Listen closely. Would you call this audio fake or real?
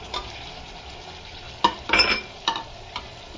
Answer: real